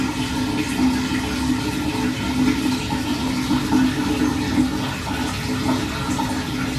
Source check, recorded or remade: recorded